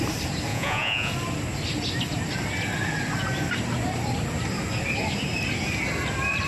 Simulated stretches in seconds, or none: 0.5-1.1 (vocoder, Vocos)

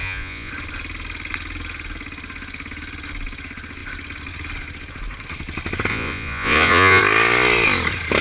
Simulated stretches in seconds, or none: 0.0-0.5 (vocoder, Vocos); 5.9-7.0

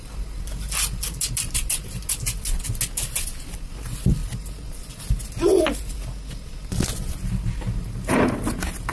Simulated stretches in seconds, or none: none

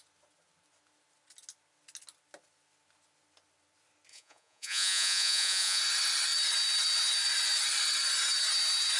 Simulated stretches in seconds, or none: 4.1-5.8 (vocoder, Vocos)